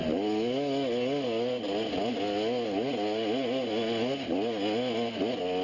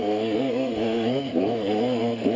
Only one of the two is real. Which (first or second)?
first